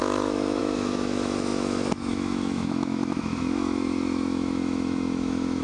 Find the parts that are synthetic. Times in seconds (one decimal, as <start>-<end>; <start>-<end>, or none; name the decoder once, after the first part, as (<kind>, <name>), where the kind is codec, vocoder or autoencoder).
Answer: 0.0-5.6 (autoencoder, DAC-VAE)